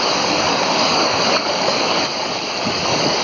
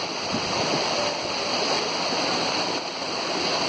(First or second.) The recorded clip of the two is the second